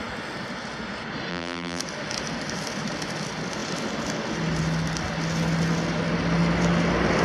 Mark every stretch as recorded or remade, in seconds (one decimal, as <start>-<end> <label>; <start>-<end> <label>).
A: 0.0-1.3 recorded; 1.3-1.8 remade; 1.8-7.2 recorded